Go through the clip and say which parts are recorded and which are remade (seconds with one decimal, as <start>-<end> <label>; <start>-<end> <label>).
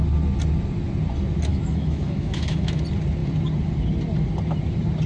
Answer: 0.0-1.5 recorded; 1.5-2.8 remade; 2.8-5.1 recorded